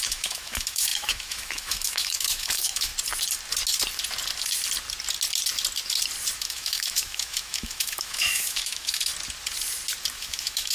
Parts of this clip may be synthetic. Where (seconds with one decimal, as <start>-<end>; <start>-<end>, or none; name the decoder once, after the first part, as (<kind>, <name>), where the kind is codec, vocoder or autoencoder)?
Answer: 0.0-2.9 (autoencoder, DAC-VAE); 6.4-9.1; 10.1-10.7

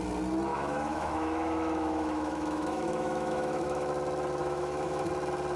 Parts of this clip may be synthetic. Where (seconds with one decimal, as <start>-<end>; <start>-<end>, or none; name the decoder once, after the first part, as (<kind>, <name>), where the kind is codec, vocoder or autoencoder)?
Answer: 0.5-3.9 (autoencoder, DAC-VAE); 4.4-5.0

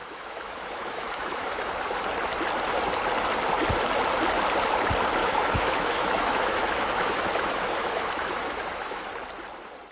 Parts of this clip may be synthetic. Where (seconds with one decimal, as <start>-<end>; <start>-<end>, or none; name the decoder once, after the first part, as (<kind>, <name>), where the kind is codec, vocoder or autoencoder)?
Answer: 0.0-1.7 (autoencoder, DAC-VAE); 5.2-9.1

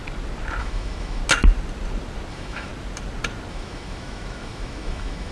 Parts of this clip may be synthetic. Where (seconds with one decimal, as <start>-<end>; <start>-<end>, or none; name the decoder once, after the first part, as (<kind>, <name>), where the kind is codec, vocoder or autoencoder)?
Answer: 0.6-1.2 (autoencoder, DAC-VAE); 2.3-2.7; 3.5-5.3

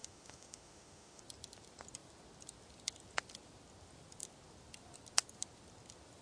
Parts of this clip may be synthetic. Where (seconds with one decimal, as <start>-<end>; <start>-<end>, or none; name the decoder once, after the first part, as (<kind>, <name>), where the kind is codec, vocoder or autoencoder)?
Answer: 0.0-1.2 (autoencoder, DAC-VAE)

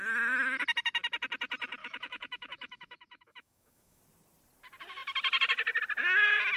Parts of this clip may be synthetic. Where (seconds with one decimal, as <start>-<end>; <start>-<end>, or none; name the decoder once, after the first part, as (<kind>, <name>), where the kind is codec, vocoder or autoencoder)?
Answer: 1.8-4.0 (autoencoder, DAC-VAE)

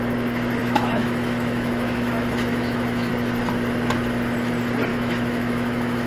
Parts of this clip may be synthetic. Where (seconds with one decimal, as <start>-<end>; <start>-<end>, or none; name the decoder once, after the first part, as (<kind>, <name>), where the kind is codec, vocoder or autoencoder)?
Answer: 0.6-3.1 (autoencoder, DAC-VAE); 4.9-6.1

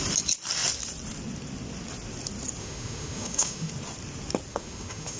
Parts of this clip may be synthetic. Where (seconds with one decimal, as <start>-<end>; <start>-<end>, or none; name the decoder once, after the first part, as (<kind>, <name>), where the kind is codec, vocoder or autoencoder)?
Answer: 2.6-3.7 (autoencoder, DAC-VAE); 4.5-5.2